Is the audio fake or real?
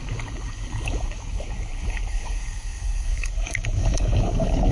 fake